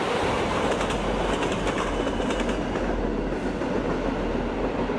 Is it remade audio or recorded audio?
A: recorded